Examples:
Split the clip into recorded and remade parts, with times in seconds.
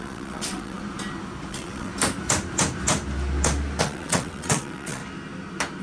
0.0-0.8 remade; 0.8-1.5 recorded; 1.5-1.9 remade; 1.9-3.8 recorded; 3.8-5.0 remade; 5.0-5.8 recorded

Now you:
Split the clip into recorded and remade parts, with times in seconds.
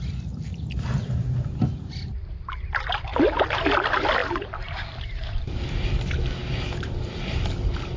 0.0-4.2 recorded; 4.2-5.9 remade; 5.9-6.4 recorded; 6.4-7.4 remade; 7.4-8.0 recorded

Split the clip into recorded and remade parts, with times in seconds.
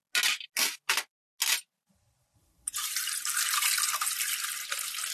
0.0-1.6 recorded; 1.6-5.1 remade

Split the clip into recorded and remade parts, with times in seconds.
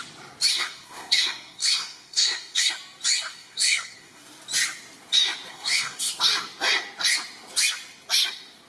0.0-0.5 recorded; 0.5-2.7 remade; 2.7-3.3 recorded; 3.3-4.2 remade; 4.2-5.5 recorded; 5.5-6.1 remade; 6.1-8.7 recorded